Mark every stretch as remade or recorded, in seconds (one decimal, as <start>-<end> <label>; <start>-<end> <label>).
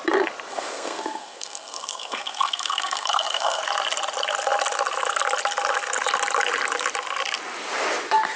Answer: 0.0-0.5 recorded; 0.5-3.6 remade; 3.6-8.4 recorded